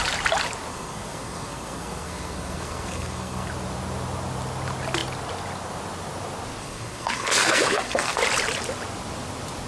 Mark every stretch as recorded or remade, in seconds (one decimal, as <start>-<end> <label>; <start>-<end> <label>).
0.0-0.7 recorded; 0.7-3.5 remade; 3.5-6.6 recorded; 6.6-8.2 remade; 8.2-9.7 recorded